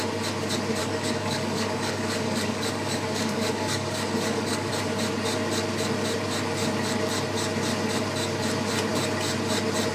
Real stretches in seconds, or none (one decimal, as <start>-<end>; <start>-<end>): 0.0-0.8; 4.7-9.9